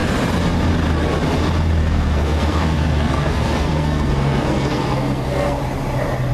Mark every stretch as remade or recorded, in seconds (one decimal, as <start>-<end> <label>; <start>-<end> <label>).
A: 0.0-1.8 recorded; 1.8-5.6 remade; 5.6-6.3 recorded